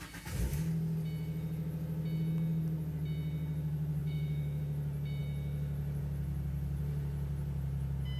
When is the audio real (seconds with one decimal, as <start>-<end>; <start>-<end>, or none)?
0.0-4.0; 4.6-8.2